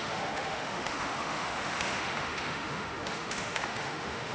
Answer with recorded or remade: remade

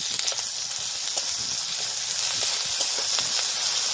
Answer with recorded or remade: recorded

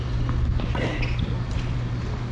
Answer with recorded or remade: recorded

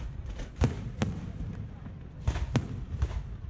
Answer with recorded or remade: recorded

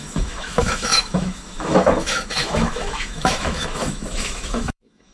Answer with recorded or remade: remade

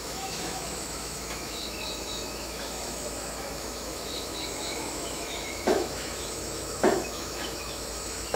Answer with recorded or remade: remade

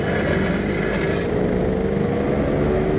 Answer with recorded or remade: recorded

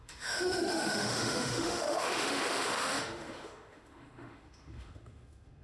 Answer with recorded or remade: remade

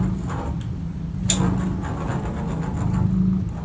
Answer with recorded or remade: recorded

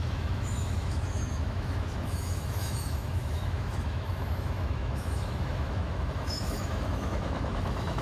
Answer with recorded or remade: remade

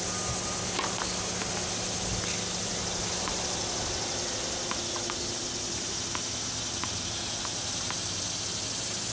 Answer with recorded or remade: recorded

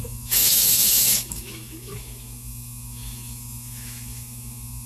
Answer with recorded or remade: remade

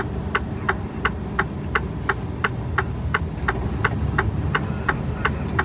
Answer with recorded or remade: recorded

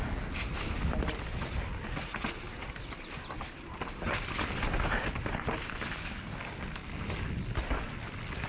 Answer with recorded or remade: recorded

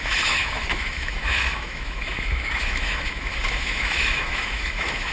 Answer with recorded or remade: remade